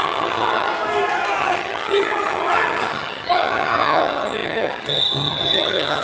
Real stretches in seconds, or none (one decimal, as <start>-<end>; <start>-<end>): 0.7-1.4